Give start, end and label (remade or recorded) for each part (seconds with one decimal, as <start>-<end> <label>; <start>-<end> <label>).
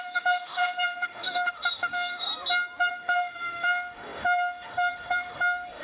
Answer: 0.0-2.3 remade; 2.3-2.9 recorded; 2.9-5.8 remade